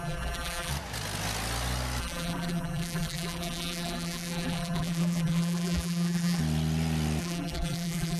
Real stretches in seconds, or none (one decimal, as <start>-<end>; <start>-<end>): 0.7-2.0; 6.4-7.2